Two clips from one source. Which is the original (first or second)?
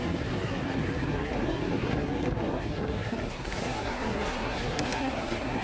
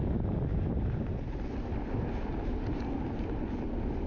second